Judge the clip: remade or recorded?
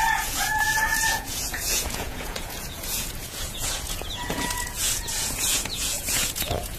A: remade